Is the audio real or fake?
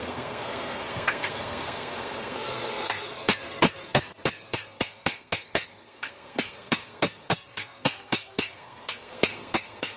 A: fake